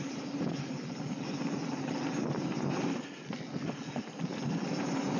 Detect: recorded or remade recorded